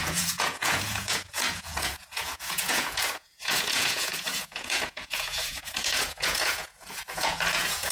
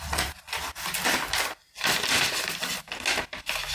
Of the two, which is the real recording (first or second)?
second